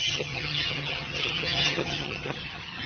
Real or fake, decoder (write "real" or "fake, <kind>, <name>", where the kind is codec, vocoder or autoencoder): fake, vocoder, HiFi-GAN